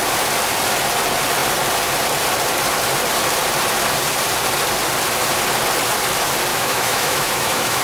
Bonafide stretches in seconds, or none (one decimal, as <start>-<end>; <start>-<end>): 0.0-6.5